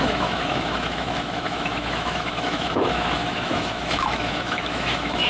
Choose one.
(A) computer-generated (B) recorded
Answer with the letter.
A